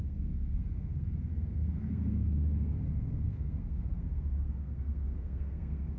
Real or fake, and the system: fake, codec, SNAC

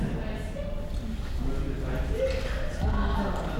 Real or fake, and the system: real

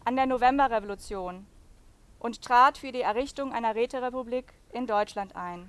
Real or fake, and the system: real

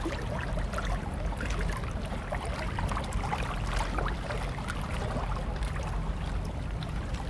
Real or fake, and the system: real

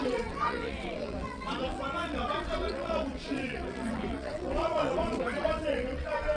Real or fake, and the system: fake, vocoder, WaveNeXt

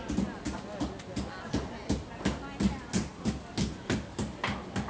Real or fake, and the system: real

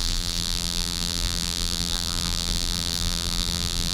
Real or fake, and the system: fake, vocoder, BigVGAN v2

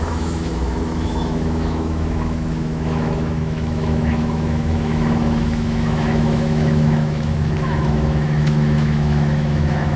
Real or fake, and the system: fake, autoencoder, DAC-VAE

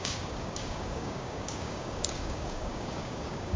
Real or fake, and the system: fake, codec, DAC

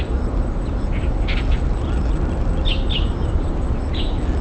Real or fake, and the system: real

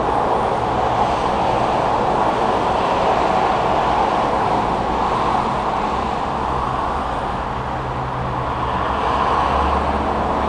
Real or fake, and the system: real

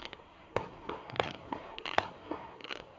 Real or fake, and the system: fake, codec, SNAC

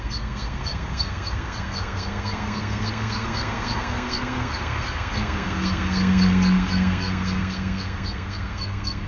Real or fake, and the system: fake, codec, SNAC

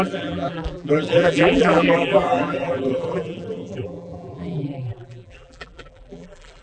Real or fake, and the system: fake, vocoder, BigVGAN v2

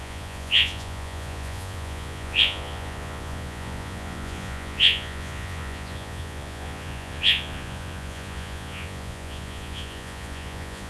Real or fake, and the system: fake, vocoder, Vocos